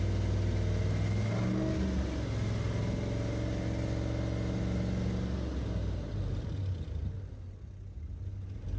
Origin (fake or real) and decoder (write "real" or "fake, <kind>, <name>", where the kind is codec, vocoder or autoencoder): real